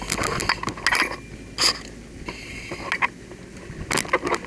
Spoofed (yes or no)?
no